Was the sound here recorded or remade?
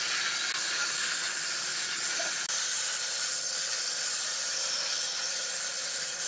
recorded